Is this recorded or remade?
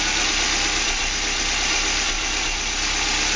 recorded